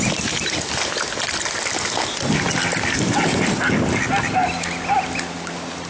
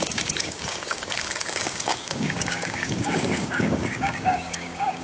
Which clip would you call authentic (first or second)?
first